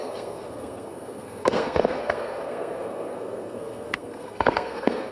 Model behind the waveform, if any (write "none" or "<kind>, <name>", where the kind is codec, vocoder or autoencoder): codec, SNAC